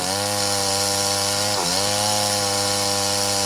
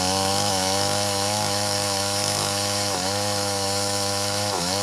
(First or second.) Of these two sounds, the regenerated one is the second